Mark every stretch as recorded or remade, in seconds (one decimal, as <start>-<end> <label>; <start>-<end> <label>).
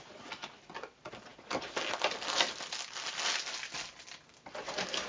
0.0-5.1 recorded